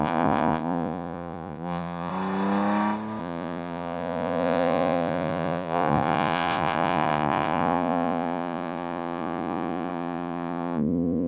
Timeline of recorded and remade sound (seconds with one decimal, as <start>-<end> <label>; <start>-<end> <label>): 0.0-2.1 remade; 2.1-3.2 recorded; 3.2-11.3 remade